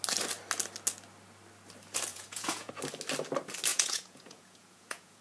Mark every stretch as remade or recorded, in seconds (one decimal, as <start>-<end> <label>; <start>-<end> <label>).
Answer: 0.0-2.1 recorded; 2.1-2.7 remade; 2.7-3.7 recorded; 3.7-5.2 remade